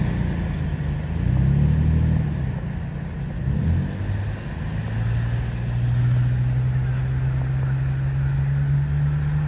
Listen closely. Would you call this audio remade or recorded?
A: recorded